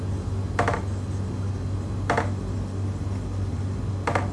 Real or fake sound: real